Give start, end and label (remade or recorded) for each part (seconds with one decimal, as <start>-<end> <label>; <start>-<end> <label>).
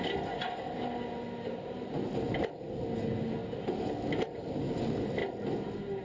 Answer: 0.0-3.4 recorded; 3.4-3.9 remade; 3.9-6.0 recorded